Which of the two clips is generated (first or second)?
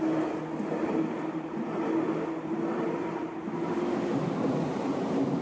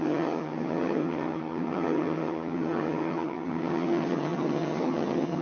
second